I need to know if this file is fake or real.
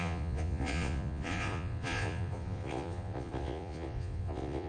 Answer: fake